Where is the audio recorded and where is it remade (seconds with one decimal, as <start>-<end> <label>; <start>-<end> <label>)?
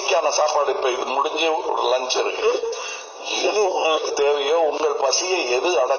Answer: 0.0-2.4 recorded; 2.4-4.1 remade; 4.1-6.0 recorded